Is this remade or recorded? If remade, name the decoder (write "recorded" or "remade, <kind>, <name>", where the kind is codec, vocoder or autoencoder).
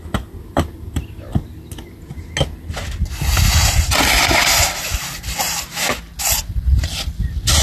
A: recorded